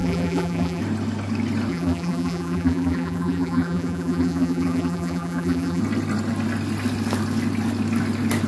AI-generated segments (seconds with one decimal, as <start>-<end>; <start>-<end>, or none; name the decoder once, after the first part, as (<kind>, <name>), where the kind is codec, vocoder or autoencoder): 0.0-0.8 (vocoder, BigVGAN v2); 1.7-5.8